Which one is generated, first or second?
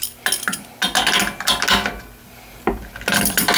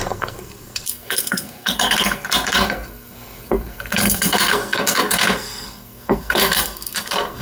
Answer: second